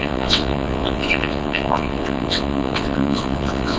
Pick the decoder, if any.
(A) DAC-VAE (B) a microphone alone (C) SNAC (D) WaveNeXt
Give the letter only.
D